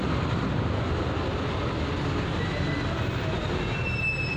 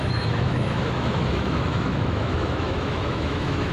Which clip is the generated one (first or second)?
second